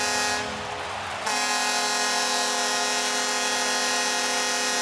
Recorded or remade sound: recorded